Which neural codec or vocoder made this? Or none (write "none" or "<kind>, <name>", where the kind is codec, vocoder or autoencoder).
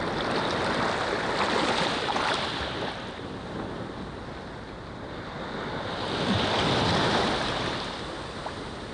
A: none